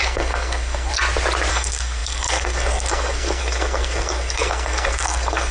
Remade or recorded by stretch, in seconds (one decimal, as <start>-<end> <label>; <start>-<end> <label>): 0.0-0.9 remade; 0.9-1.5 recorded; 1.5-5.5 remade